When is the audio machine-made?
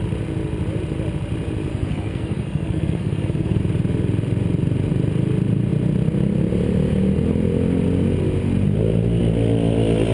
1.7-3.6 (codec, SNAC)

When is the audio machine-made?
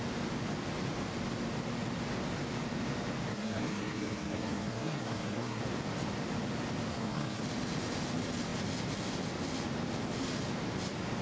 3.3-5.6 (codec, SNAC); 6.9-7.4